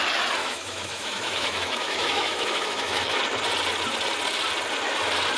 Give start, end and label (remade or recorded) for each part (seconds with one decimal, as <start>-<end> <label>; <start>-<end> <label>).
0.0-0.4 recorded; 0.4-3.2 remade; 3.2-5.4 recorded